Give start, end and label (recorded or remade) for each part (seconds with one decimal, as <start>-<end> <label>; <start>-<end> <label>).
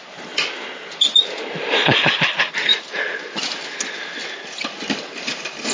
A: 0.0-5.7 recorded